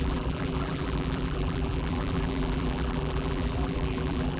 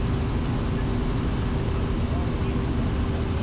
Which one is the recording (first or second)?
second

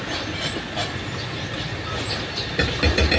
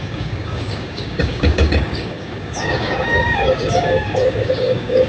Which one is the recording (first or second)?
first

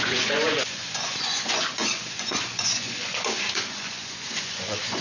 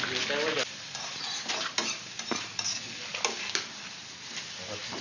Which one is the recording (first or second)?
second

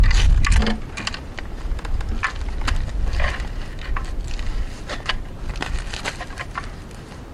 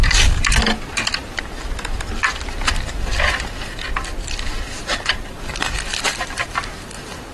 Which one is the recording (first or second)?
first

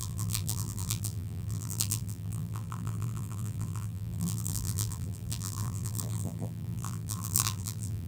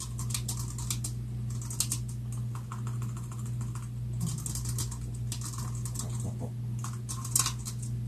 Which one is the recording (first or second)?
second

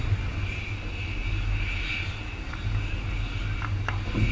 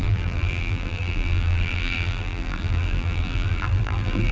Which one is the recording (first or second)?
first